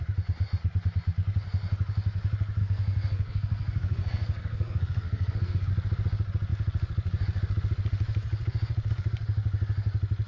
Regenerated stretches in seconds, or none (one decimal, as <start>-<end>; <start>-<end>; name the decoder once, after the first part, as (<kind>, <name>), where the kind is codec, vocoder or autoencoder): 2.6-5.7 (codec, SNAC)